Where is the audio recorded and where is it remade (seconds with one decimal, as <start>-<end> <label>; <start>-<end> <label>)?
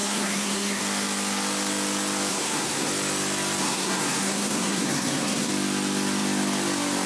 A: 0.0-0.8 remade; 0.8-2.3 recorded; 2.3-2.9 remade; 2.9-3.6 recorded; 3.6-5.5 remade; 5.5-7.1 recorded